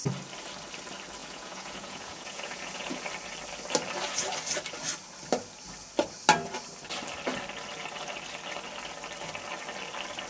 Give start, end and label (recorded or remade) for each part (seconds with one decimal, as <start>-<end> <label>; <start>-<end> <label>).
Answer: 0.0-1.2 recorded; 1.2-3.0 remade; 3.0-10.3 recorded